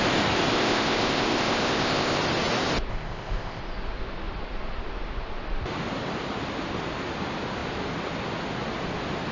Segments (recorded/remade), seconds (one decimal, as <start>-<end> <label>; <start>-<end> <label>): 0.0-0.5 recorded; 0.5-2.2 remade; 2.2-2.9 recorded; 2.9-3.6 remade; 3.6-9.3 recorded